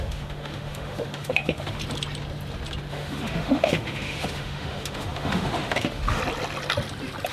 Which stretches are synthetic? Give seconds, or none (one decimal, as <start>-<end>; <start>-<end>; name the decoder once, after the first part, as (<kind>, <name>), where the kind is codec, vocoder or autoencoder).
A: 0.0-1.8 (autoencoder, DAC-VAE); 2.9-6.2